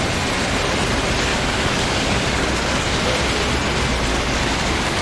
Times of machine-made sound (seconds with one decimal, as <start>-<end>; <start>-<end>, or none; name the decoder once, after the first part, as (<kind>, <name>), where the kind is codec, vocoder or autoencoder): 1.3-3.0 (codec, DAC); 4.1-5.0